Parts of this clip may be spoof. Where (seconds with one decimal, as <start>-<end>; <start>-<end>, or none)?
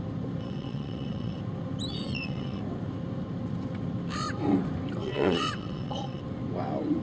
0.4-1.4; 1.9-2.6; 5.0-6.2